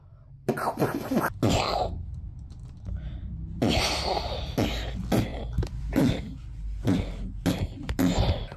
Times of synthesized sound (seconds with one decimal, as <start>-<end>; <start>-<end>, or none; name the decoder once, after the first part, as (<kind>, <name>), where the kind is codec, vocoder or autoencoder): 5.3-6.2 (vocoder, BigVGAN v2)